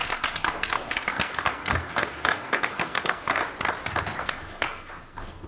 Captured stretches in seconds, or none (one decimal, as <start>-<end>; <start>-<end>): 3.4-4.2